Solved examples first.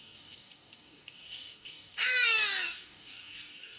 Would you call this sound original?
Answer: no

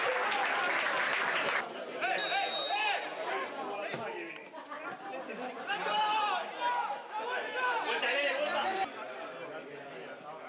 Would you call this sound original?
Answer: yes